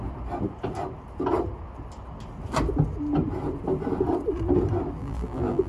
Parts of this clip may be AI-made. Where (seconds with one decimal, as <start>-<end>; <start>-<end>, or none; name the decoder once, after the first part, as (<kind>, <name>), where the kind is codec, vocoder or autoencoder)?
5.0-5.7 (vocoder, BigVGAN v2)